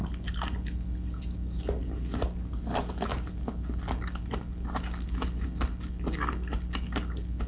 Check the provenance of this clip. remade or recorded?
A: recorded